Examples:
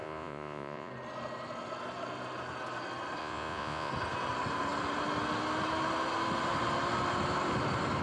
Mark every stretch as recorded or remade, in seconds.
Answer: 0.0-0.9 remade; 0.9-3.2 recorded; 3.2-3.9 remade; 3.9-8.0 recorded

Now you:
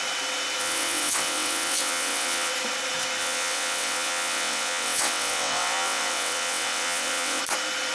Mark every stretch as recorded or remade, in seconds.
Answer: 0.0-0.6 recorded; 0.6-2.5 remade; 2.5-3.2 recorded; 3.2-7.4 remade; 7.4-7.9 recorded